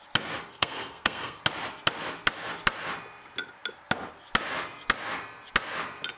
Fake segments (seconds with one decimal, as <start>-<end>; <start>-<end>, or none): 0.5-1.4